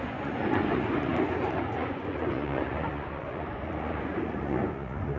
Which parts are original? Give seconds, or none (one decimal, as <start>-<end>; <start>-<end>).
none